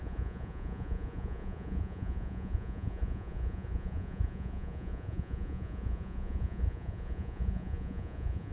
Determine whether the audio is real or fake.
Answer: fake